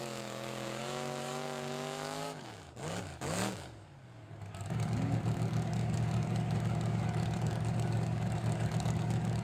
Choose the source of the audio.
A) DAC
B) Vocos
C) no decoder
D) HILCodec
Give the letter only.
A